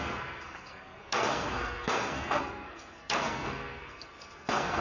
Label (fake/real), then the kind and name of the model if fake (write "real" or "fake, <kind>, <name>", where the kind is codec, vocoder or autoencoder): fake, codec, SNAC